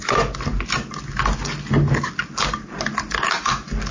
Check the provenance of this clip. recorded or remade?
recorded